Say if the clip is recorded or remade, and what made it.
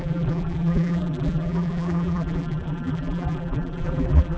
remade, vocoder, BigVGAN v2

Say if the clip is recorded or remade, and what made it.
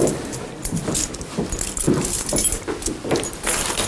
recorded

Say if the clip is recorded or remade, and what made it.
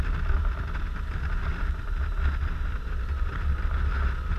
recorded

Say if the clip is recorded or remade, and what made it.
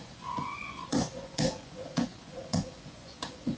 remade, vocoder, Vocos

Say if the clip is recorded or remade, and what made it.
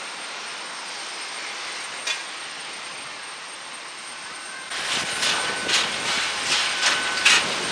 recorded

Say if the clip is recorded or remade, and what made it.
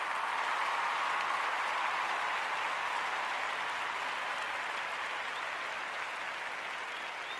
recorded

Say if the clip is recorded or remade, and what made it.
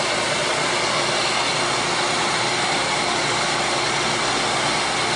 recorded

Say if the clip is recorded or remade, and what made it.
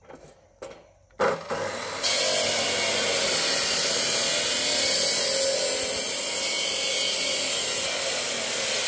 recorded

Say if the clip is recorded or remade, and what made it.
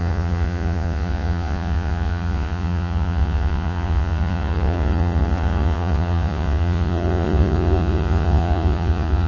remade, vocoder, Vocos